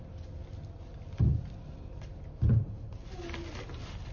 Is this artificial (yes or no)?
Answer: no